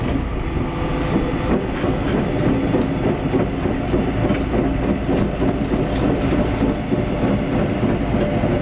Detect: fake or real real